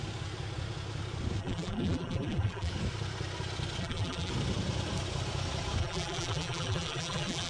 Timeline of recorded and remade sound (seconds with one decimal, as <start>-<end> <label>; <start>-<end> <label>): 0.0-1.4 recorded; 1.4-2.7 remade; 2.7-3.8 recorded; 3.8-4.3 remade; 4.3-5.8 recorded; 5.8-7.5 remade